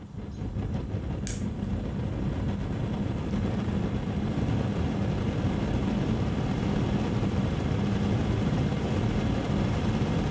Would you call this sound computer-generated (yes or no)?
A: no